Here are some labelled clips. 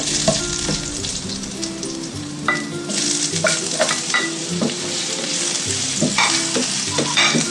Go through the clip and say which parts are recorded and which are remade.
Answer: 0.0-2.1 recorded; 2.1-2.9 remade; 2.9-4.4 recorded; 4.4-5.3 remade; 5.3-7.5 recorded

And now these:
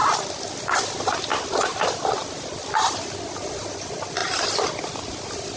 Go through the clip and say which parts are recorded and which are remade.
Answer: 0.0-5.6 recorded

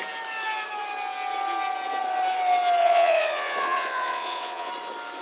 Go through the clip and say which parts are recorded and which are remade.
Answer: 0.0-2.8 recorded; 2.8-4.7 remade; 4.7-5.2 recorded